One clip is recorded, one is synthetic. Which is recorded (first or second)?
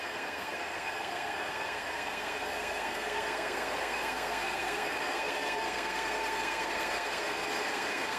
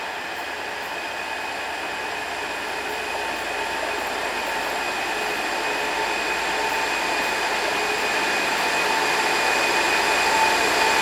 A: second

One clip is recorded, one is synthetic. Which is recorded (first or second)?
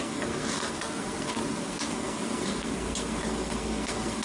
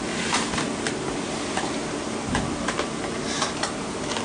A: second